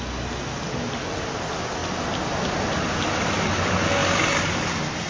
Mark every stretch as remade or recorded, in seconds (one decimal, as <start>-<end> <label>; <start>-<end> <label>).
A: 0.0-5.1 recorded